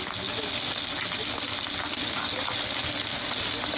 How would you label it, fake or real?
real